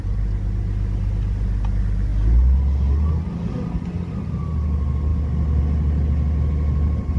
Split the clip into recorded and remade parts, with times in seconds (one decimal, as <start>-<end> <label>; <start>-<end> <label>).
0.0-7.2 recorded

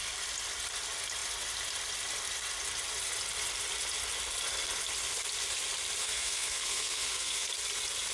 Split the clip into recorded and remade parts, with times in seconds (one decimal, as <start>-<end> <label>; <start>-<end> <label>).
0.0-6.0 recorded; 6.0-7.5 remade; 7.5-8.1 recorded

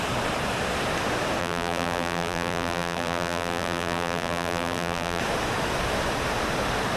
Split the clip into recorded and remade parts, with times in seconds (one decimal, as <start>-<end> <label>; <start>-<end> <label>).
0.0-1.4 recorded; 1.4-5.2 remade; 5.2-7.0 recorded

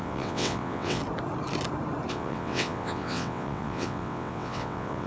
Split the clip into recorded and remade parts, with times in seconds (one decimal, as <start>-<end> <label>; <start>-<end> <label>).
0.0-1.0 remade; 1.0-2.1 recorded; 2.1-5.1 remade

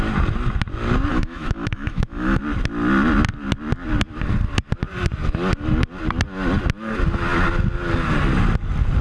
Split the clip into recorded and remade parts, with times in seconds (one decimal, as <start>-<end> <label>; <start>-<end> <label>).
0.0-1.1 recorded; 1.1-2.4 remade; 2.4-9.0 recorded

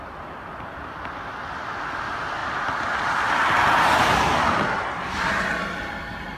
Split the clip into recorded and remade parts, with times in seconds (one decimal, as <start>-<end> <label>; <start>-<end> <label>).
0.0-2.4 recorded; 2.4-5.3 remade; 5.3-6.4 recorded

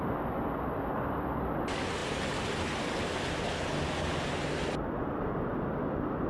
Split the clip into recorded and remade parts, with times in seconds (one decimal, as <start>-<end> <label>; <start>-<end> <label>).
0.0-6.3 recorded